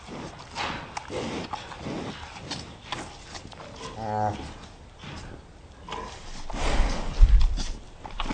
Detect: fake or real real